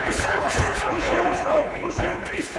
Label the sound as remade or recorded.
remade